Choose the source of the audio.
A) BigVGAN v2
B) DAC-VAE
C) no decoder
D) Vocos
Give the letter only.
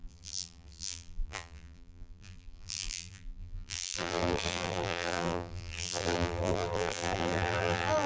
A